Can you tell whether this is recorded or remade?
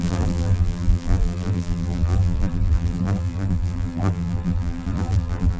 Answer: remade